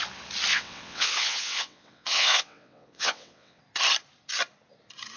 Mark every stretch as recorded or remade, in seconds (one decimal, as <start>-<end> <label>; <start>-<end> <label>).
0.0-0.5 recorded; 0.5-3.6 remade; 3.6-5.2 recorded